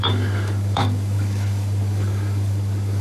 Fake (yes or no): yes